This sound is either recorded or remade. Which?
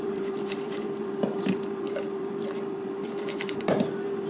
remade